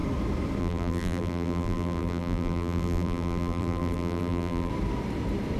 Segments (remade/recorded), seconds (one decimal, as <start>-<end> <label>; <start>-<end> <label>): 0.0-0.6 recorded; 0.6-4.7 remade; 4.7-5.6 recorded